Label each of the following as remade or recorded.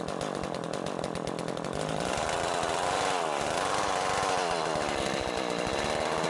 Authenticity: recorded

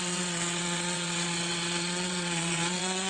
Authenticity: remade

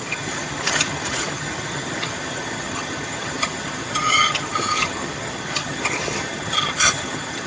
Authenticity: remade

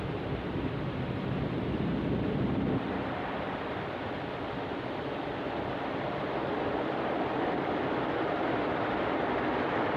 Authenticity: remade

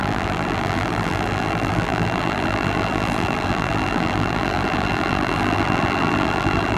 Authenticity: remade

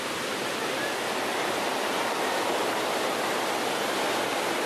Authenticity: recorded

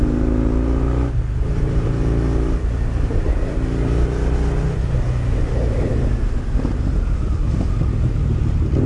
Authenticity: recorded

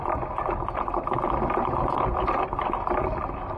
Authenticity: recorded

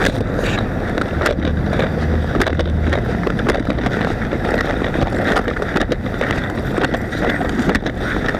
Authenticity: recorded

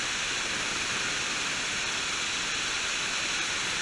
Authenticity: remade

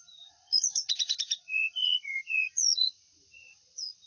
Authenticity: remade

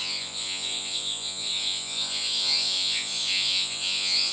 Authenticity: remade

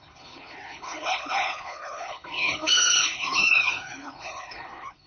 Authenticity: remade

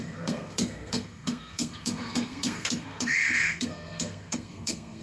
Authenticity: remade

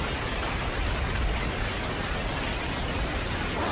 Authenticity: recorded